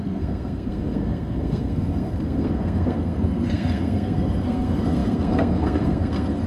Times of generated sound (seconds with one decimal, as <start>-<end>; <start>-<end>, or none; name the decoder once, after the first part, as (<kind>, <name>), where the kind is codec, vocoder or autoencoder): 0.0-6.5 (codec, SNAC)